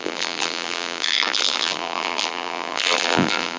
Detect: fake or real fake